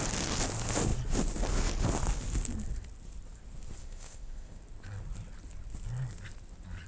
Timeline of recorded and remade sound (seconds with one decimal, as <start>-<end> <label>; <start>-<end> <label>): 0.0-3.8 recorded; 3.8-4.6 remade; 4.6-6.9 recorded